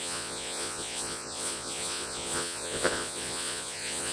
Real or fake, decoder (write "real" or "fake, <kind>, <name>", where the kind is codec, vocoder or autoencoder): fake, vocoder, Vocos